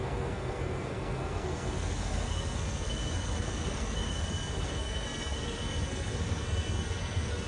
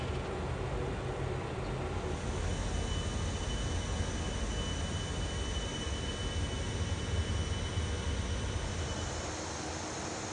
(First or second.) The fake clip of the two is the first